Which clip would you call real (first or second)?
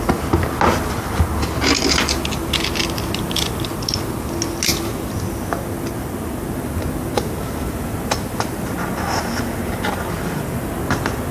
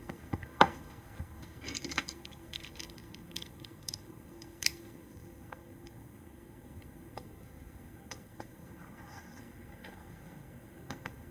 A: first